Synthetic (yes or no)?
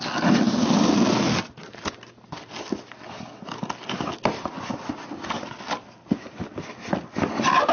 no